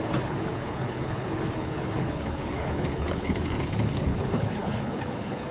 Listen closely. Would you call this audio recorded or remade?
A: remade